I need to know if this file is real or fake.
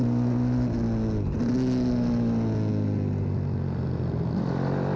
real